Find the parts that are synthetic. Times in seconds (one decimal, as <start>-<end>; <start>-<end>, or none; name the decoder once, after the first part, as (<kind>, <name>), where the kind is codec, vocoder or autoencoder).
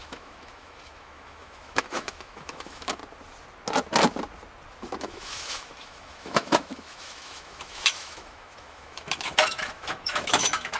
0.0-3.0 (autoencoder, DAC-VAE); 5.0-10.8